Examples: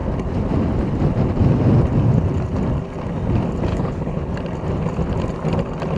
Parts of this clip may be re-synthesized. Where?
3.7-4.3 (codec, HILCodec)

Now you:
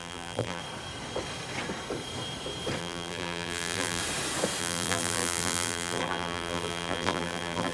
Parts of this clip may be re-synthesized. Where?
0.0-0.6 (vocoder, BigVGAN v2); 2.8-4.0; 4.6-7.7